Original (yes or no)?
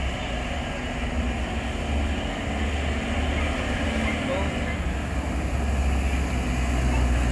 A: yes